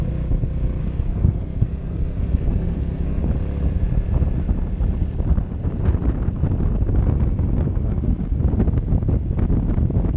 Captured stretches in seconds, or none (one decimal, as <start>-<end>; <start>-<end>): 0.0-0.8; 3.2-7.7; 8.4-10.2